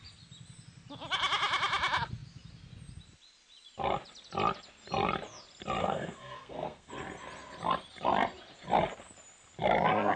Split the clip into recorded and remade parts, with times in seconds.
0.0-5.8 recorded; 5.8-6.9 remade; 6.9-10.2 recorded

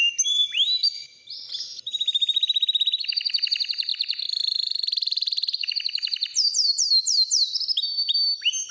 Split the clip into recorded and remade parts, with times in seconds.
0.0-8.7 recorded

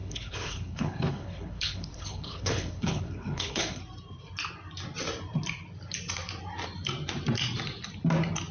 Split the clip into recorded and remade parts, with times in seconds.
0.0-3.8 remade; 3.8-8.5 recorded